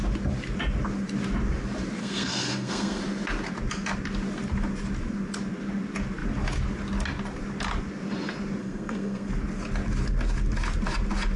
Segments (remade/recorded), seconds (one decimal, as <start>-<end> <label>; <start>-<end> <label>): 0.0-2.0 recorded; 2.0-3.0 remade; 3.0-8.6 recorded; 8.6-9.3 remade; 9.3-11.4 recorded